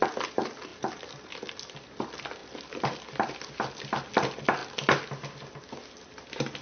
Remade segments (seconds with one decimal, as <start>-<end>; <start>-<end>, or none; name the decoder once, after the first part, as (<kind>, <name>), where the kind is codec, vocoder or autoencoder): none

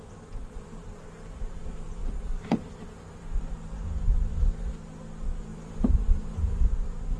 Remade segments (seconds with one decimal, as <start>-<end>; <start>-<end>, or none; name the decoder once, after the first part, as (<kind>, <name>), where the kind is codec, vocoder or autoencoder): 0.4-1.6 (vocoder, BigVGAN v2); 2.0-3.4; 5.5-6.7

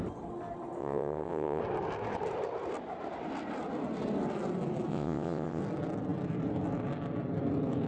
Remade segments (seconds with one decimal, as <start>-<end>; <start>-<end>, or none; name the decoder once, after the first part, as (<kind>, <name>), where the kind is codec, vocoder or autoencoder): 0.8-1.6 (vocoder, WaveNeXt); 4.9-5.6

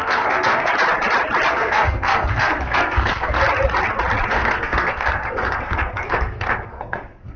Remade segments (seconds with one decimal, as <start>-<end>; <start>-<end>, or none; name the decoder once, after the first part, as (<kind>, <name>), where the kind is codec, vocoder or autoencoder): 0.0-0.7 (codec, SNAC); 1.5-3.4; 4.3-7.4

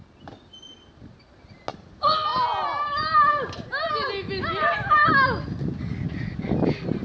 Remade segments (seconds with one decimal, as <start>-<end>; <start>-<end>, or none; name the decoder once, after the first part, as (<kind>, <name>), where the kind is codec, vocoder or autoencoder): 4.6-5.1 (vocoder, BigVGAN v2)